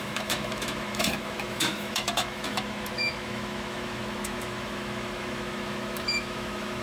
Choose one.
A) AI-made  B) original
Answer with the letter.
A